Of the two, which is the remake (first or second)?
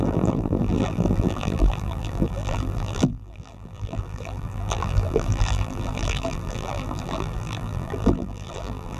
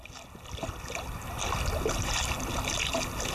first